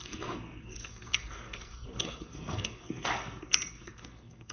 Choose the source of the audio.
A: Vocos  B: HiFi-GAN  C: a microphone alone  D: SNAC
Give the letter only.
D